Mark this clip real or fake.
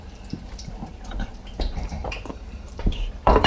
fake